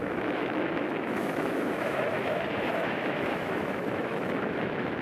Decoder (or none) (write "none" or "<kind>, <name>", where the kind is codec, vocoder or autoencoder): autoencoder, DAC-VAE